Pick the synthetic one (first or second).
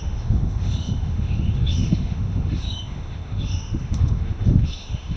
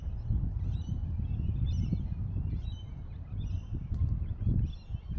first